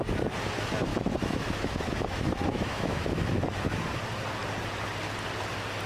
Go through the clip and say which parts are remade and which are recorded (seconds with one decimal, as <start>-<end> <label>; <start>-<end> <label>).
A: 0.0-0.9 recorded; 0.9-3.8 remade; 3.8-5.9 recorded